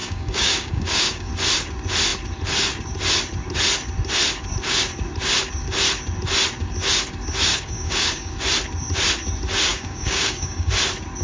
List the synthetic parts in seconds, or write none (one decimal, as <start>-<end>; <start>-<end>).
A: 0.0-1.3; 7.5-8.3; 9.7-10.7